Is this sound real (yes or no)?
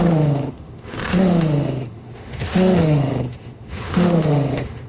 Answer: no